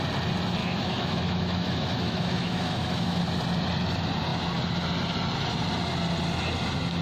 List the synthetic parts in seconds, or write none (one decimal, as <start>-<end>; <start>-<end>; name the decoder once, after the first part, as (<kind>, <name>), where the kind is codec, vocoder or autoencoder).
0.6-3.2 (autoencoder, DAC-VAE)